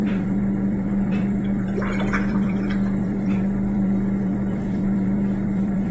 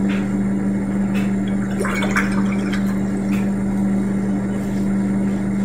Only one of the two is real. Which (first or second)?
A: second